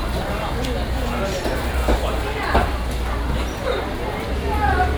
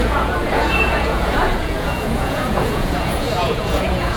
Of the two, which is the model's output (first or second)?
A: second